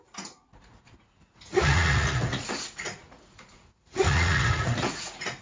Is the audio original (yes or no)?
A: no